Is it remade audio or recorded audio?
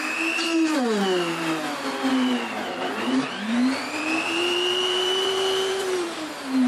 remade